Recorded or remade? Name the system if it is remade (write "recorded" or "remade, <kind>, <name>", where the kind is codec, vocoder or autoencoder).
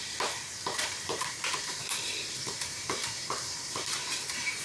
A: remade, vocoder, BigVGAN v2